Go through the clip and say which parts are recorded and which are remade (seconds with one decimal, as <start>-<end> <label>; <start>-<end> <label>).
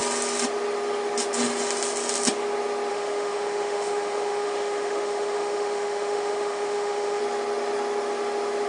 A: 0.0-2.9 recorded; 2.9-7.2 remade; 7.2-8.7 recorded